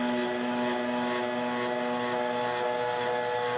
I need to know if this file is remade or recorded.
recorded